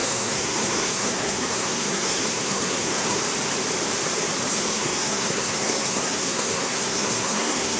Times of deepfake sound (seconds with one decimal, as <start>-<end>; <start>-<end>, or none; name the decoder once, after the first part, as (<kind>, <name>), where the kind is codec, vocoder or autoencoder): 0.0-3.2 (codec, SNAC); 4.5-7.8